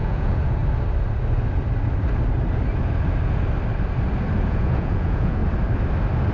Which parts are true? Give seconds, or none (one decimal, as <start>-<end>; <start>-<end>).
0.6-4.4; 5.4-6.3